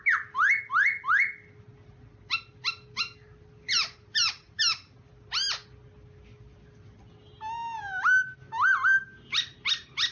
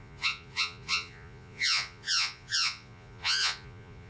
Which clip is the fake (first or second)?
second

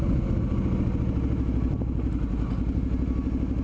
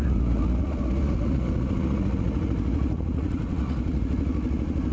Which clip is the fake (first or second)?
second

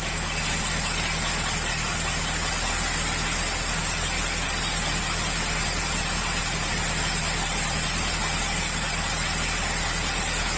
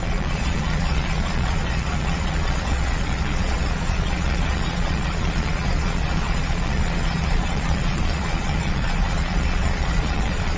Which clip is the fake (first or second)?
second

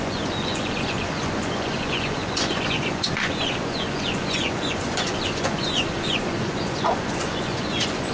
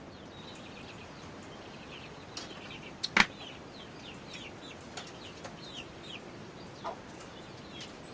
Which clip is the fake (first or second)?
first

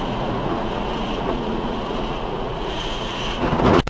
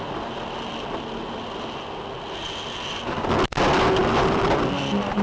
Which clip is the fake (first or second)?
first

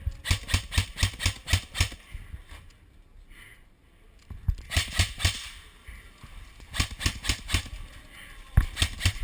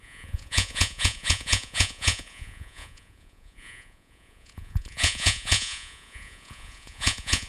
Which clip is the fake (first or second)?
second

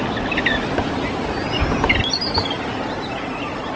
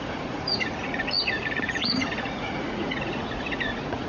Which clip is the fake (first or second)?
second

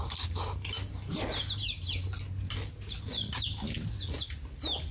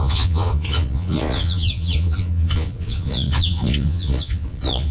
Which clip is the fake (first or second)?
second